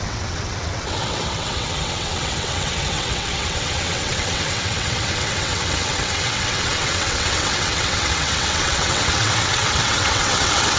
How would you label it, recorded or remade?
remade